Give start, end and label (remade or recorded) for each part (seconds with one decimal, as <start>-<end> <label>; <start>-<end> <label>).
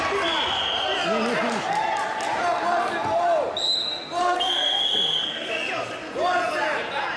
0.0-4.2 recorded; 4.2-5.5 remade; 5.5-7.2 recorded